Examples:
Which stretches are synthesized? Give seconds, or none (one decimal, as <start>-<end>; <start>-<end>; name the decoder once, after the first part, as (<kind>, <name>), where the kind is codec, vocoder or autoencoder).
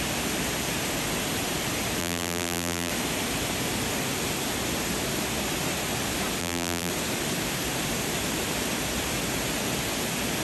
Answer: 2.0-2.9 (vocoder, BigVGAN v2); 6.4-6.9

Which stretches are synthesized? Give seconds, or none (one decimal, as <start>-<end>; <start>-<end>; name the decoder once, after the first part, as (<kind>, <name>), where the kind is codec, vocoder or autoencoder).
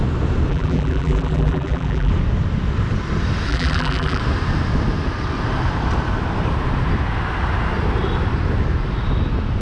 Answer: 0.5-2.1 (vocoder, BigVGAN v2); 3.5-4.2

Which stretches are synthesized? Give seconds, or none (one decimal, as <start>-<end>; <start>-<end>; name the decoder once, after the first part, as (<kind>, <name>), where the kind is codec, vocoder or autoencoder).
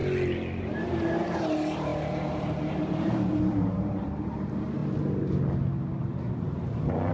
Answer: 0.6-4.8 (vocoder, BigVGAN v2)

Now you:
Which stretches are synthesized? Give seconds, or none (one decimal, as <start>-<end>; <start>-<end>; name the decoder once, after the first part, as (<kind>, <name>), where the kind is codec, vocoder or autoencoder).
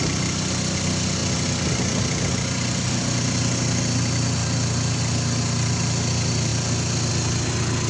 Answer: none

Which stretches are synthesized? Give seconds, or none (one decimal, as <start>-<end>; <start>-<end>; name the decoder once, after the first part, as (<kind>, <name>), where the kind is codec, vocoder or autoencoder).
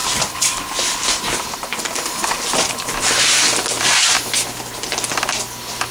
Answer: 0.0-3.5 (vocoder, BigVGAN v2)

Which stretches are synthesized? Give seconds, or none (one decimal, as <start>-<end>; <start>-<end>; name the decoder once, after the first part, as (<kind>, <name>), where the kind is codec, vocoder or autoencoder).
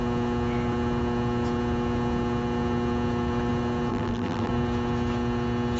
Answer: 3.9-4.5 (vocoder, BigVGAN v2)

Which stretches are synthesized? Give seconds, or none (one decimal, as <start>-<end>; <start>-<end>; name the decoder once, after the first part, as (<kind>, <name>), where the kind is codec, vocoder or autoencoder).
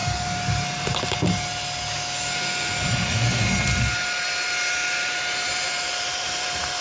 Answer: 3.8-6.8 (vocoder, BigVGAN v2)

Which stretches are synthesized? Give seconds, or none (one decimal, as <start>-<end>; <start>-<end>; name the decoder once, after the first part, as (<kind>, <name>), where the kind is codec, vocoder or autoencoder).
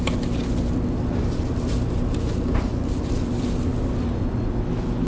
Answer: none